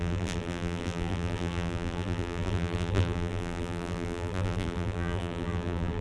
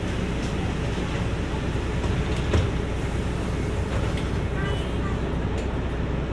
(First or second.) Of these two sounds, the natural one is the second